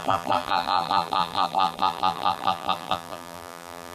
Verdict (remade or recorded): remade